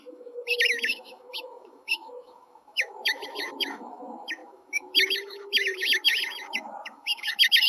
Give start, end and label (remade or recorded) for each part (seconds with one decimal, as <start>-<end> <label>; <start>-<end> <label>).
0.0-7.7 remade

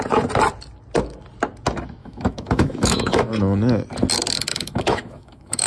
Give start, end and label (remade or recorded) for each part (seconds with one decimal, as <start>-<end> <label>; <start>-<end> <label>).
0.0-2.0 recorded; 2.0-3.3 remade; 3.3-4.5 recorded; 4.5-5.7 remade

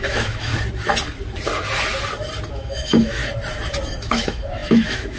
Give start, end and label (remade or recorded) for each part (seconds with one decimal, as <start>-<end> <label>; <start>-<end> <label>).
0.0-0.5 remade; 0.5-2.5 recorded; 2.5-3.2 remade; 3.2-4.0 recorded; 4.0-5.2 remade

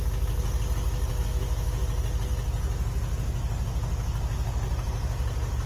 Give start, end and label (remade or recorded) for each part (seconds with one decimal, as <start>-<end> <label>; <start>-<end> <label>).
0.0-1.1 recorded; 1.1-1.8 remade; 1.8-5.7 recorded

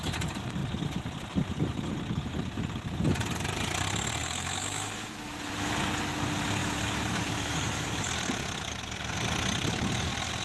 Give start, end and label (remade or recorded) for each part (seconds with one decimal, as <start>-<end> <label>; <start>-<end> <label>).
0.0-4.2 recorded; 4.2-5.7 remade; 5.7-6.6 recorded; 6.6-8.1 remade; 8.1-10.4 recorded

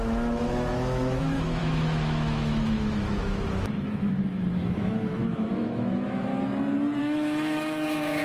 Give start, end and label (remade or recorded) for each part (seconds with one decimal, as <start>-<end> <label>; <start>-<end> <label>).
0.0-6.3 remade; 6.3-7.0 recorded; 7.0-8.2 remade